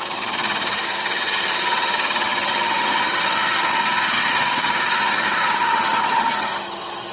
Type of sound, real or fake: fake